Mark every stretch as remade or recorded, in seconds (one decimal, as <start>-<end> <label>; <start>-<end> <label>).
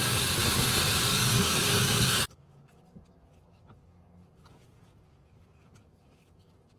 0.0-6.8 remade